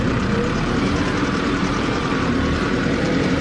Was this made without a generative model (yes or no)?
no